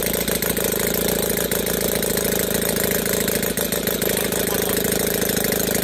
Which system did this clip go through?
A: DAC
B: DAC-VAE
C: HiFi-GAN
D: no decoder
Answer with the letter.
D